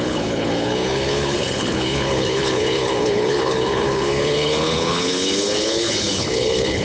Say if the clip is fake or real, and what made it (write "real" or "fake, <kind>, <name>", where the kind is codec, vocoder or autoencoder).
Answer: fake, codec, HILCodec